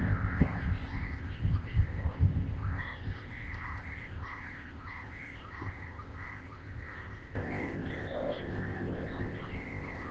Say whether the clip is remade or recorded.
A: remade